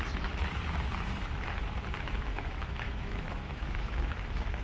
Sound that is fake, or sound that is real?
fake